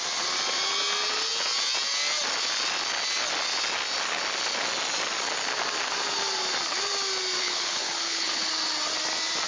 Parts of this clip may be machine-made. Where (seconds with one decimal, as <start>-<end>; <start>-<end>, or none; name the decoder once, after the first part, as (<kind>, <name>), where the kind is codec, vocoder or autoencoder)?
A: 7.4-8.5 (codec, HILCodec)